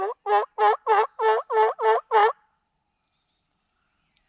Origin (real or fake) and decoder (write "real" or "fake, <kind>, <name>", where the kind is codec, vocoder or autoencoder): real